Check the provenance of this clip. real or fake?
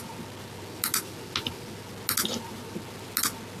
real